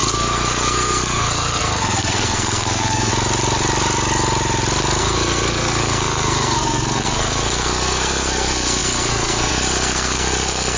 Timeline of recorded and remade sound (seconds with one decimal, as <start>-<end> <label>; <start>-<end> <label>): 0.0-3.1 remade; 3.1-5.0 recorded; 5.0-10.8 remade